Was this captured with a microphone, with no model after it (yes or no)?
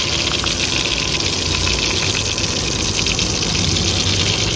yes